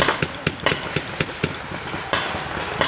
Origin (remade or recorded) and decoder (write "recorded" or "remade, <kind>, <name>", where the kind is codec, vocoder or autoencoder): remade, vocoder, BigVGAN v2